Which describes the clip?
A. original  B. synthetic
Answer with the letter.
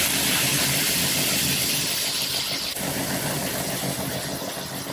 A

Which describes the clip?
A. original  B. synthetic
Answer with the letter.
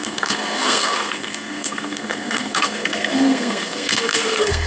B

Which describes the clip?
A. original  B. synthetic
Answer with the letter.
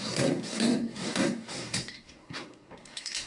B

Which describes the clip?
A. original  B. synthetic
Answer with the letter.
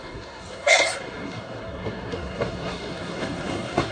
B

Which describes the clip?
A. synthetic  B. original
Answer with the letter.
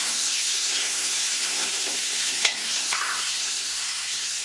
A